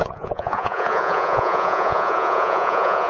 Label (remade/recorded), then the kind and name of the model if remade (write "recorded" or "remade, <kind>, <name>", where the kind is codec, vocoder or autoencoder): remade, vocoder, Vocos